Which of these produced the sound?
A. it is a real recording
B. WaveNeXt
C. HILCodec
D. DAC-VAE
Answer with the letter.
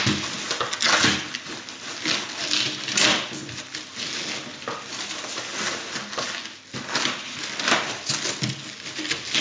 A